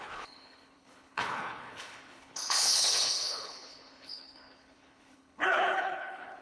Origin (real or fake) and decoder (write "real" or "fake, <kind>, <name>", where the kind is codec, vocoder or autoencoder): fake, codec, HILCodec